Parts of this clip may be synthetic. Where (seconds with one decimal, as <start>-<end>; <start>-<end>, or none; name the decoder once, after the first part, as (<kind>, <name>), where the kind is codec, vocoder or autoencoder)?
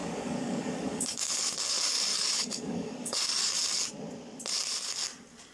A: 0.0-1.4 (codec, DAC); 2.1-3.5